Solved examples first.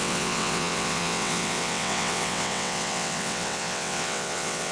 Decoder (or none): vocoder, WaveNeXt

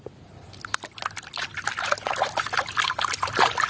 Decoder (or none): none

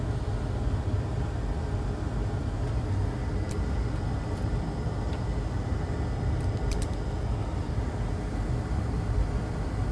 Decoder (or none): none